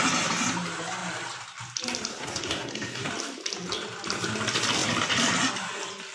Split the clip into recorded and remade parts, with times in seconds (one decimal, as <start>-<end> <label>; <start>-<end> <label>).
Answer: 0.0-2.1 recorded; 2.1-3.1 remade; 3.1-6.1 recorded